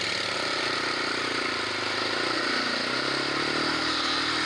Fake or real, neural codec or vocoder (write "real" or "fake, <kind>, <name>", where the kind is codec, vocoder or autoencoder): real